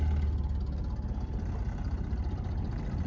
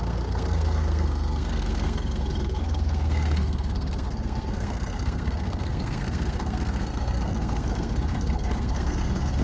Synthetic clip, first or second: second